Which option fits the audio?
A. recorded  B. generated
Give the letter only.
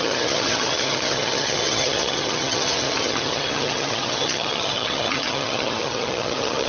B